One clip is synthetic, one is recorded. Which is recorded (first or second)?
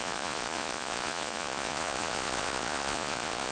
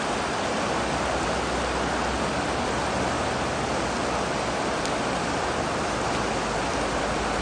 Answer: second